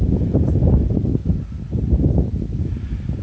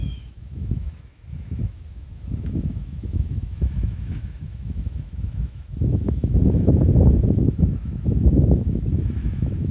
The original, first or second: first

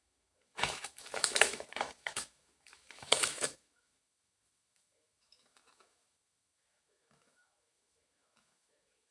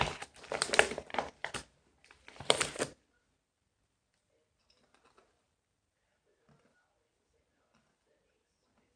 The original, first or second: second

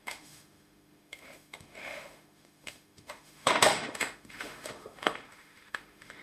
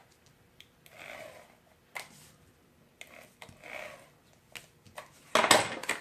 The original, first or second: second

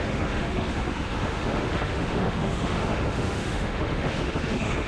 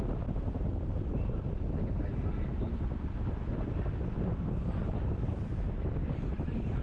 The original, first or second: second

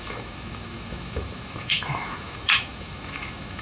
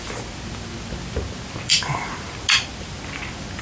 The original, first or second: second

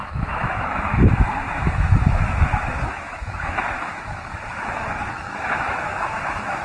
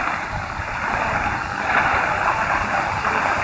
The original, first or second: second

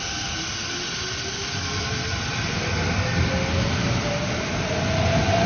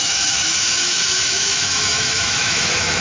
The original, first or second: first